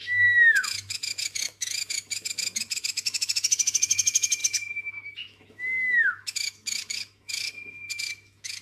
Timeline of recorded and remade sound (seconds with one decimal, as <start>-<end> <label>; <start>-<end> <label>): 0.0-8.6 remade